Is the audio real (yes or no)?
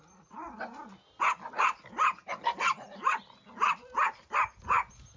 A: yes